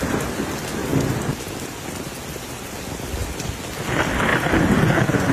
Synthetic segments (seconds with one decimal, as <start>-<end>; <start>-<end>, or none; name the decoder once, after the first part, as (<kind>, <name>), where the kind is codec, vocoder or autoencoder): 4.3-4.8 (vocoder, BigVGAN v2)